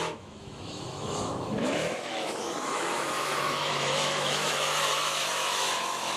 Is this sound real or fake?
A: fake